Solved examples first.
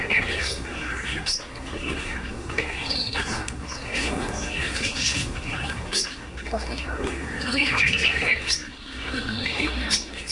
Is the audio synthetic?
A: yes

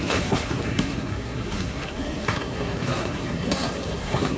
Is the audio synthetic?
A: yes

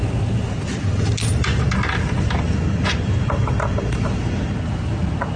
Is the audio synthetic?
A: no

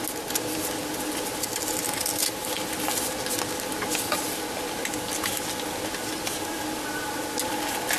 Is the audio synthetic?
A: no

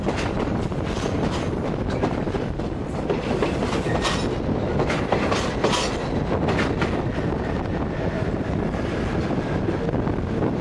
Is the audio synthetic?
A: no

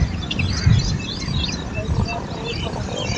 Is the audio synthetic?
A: no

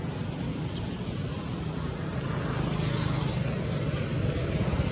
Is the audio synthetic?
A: no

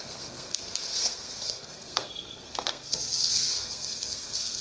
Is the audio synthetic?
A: yes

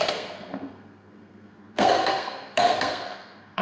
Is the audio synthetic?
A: yes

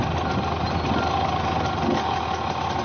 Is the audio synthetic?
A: no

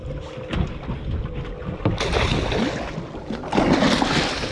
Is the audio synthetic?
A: no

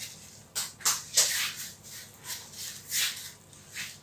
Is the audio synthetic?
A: no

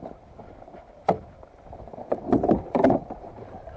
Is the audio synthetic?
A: no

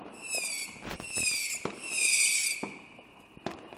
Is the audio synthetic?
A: no